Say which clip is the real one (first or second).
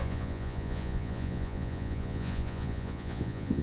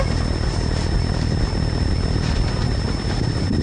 second